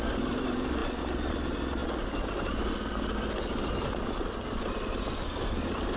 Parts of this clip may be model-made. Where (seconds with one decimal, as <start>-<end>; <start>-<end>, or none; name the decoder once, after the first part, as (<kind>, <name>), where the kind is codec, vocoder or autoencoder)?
none